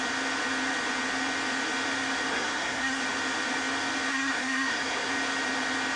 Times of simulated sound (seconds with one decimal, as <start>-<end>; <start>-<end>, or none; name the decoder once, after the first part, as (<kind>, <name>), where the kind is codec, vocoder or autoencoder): 2.3-3.0 (codec, SNAC); 4.1-5.1

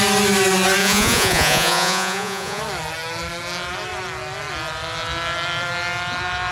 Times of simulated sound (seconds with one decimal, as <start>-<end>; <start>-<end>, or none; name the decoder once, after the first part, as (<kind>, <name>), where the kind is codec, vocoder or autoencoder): 0.8-2.6 (vocoder, Vocos)

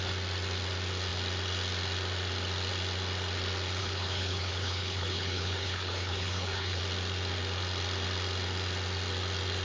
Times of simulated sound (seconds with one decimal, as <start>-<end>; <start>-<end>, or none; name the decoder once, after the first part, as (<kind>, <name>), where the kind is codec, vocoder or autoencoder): 3.8-6.8 (codec, HILCodec)

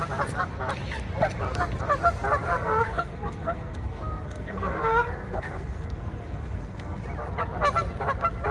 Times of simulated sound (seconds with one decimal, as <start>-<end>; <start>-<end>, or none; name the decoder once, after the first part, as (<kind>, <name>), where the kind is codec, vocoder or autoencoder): 2.5-7.0 (codec, SNAC)

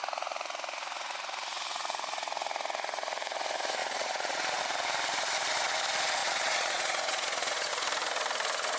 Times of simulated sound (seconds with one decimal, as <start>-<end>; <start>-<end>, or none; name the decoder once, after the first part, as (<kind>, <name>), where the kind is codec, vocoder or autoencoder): 3.8-4.6 (vocoder, Vocos); 6.2-7.7

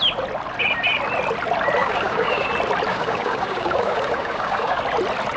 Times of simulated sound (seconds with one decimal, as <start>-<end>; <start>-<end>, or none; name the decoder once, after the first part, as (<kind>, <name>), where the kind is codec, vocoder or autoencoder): 1.8-2.5 (codec, DAC); 2.9-4.8